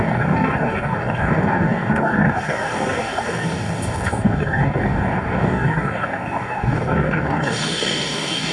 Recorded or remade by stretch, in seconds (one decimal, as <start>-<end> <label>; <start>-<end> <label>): 0.0-8.5 remade